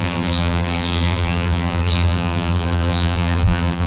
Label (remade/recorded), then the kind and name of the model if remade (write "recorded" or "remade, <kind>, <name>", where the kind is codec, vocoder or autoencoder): remade, vocoder, BigVGAN v2